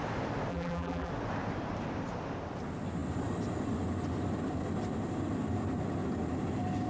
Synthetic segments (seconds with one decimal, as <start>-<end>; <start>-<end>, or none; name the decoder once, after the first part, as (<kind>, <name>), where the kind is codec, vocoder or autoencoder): 0.5-1.1 (vocoder, BigVGAN v2)